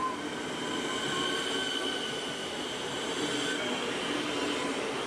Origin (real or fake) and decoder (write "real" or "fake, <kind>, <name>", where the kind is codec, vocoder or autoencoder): real